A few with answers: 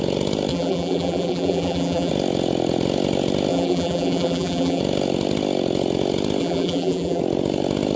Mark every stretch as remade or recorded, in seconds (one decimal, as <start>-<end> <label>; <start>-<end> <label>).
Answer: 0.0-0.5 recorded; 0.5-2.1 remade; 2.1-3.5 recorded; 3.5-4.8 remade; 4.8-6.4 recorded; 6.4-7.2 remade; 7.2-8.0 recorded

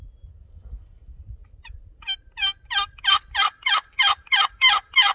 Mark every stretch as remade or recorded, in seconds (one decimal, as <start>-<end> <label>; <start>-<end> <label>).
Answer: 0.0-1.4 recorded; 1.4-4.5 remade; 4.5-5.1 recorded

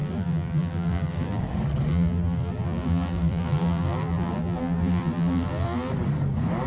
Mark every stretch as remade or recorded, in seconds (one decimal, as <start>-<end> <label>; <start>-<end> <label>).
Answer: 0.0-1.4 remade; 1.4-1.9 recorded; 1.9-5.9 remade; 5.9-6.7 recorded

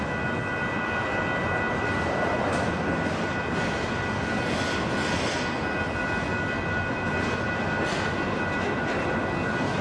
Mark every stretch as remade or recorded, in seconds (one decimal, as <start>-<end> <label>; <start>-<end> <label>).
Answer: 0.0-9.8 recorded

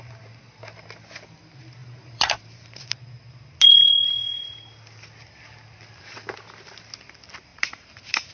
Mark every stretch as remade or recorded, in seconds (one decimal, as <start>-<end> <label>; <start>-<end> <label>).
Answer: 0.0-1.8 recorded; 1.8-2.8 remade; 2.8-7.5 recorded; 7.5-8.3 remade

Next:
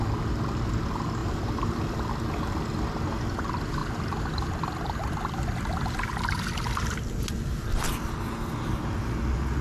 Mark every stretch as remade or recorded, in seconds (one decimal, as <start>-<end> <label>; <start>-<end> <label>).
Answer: 0.0-1.2 recorded; 1.2-2.1 remade; 2.1-9.6 recorded